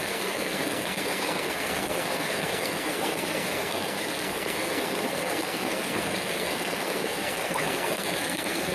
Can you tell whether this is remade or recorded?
remade